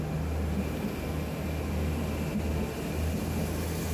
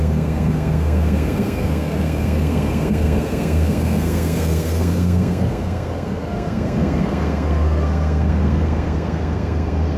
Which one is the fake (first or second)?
second